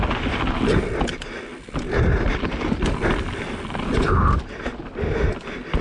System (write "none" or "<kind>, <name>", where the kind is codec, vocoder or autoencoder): none